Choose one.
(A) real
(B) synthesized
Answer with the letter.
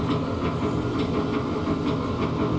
A